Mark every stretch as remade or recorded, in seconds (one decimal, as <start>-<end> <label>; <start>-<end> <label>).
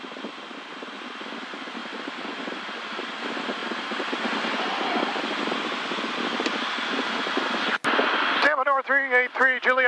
0.0-9.9 recorded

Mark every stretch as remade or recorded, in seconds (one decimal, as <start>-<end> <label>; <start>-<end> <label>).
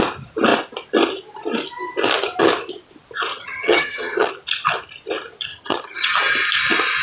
0.0-3.3 recorded; 3.3-4.3 remade; 4.3-5.5 recorded; 5.5-6.1 remade; 6.1-7.0 recorded